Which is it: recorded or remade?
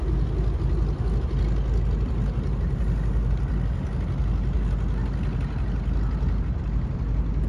recorded